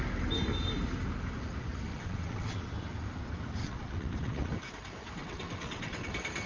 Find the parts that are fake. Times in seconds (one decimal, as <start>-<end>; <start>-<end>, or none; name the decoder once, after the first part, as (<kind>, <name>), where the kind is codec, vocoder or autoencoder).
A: 1.9-2.7 (vocoder, WaveNeXt); 3.6-4.5; 5.2-6.1